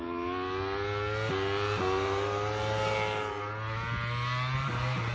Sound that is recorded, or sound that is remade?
recorded